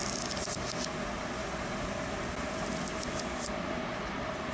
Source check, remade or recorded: recorded